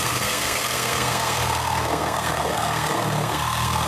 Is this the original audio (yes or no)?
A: no